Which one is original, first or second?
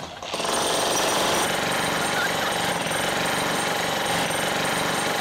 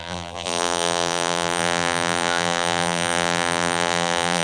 first